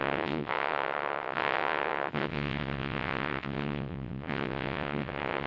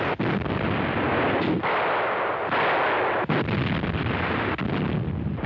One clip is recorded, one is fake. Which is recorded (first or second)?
second